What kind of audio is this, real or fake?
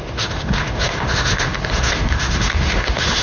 fake